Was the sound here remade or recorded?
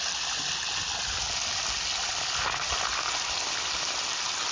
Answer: recorded